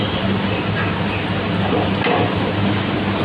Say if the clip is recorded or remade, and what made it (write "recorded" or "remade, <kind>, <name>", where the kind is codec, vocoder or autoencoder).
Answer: recorded